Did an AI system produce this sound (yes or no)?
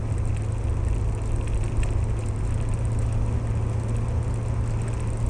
no